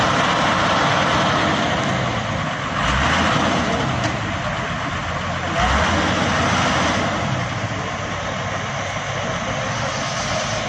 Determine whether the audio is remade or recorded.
recorded